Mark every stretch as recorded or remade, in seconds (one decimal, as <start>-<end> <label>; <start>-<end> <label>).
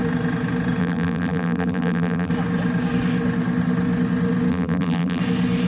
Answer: 0.0-0.8 recorded; 0.8-2.3 remade; 2.3-4.5 recorded; 4.5-5.2 remade; 5.2-5.7 recorded